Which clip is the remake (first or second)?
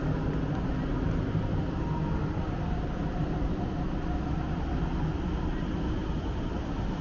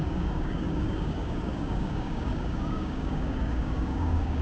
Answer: second